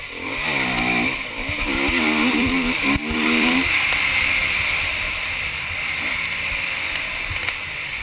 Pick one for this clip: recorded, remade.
remade